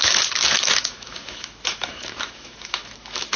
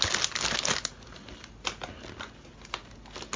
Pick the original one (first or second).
second